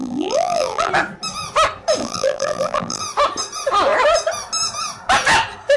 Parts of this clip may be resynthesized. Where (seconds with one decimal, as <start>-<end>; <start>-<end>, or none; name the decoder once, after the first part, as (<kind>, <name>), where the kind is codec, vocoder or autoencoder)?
0.0-0.9 (vocoder, BigVGAN v2); 2.0-3.0